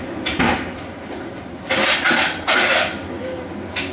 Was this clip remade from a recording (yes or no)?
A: no